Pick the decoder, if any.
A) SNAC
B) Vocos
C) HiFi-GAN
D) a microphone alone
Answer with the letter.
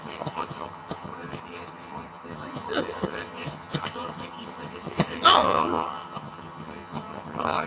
C